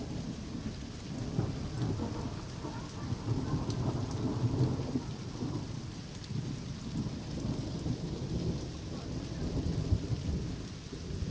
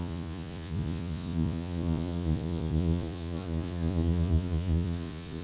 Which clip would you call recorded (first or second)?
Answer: first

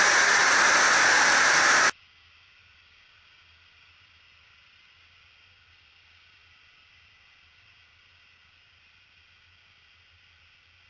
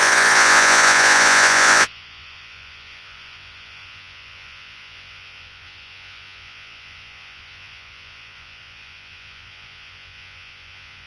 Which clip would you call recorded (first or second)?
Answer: first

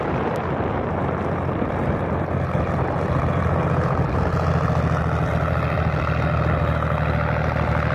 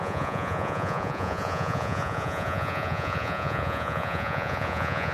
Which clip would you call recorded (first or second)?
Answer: first